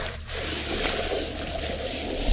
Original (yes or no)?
yes